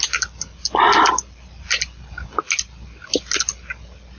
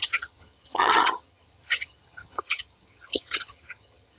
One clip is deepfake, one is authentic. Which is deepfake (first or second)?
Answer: second